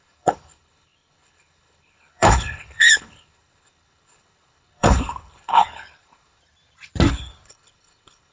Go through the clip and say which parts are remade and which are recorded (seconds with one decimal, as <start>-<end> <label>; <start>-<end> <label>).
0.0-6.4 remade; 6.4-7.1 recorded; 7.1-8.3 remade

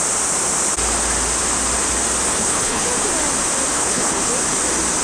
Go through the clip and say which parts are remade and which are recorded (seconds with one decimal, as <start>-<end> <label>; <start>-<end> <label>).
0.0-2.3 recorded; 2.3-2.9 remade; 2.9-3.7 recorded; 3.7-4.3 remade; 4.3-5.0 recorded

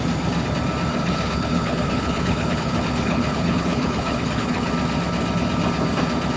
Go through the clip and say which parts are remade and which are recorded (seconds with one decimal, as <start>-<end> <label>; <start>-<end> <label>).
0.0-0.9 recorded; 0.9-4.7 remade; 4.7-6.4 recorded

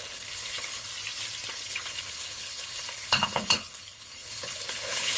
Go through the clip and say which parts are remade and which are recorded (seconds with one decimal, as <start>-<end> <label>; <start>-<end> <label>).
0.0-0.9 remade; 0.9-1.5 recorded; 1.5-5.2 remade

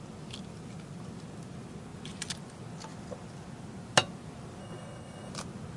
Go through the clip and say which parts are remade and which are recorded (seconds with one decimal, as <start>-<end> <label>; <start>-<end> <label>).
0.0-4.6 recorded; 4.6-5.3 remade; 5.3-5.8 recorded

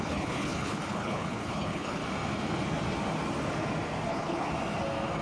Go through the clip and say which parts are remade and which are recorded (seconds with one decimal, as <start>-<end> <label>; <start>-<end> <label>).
0.0-2.0 remade; 2.0-4.1 recorded; 4.1-4.5 remade; 4.5-5.2 recorded

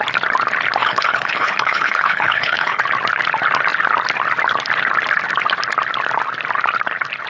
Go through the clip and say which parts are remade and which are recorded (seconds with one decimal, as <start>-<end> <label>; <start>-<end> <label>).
0.0-0.8 recorded; 0.8-2.8 remade; 2.8-7.3 recorded